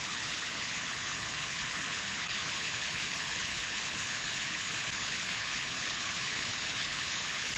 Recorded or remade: remade